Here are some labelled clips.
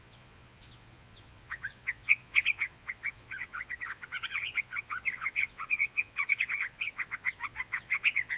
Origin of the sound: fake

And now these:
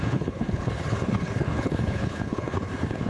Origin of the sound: fake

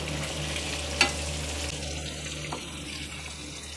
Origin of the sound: real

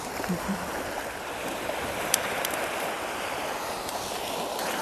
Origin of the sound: fake